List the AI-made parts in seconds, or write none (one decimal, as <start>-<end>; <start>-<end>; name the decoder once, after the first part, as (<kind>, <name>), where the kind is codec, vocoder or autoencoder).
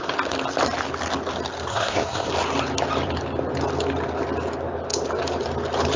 1.7-2.3 (codec, SNAC)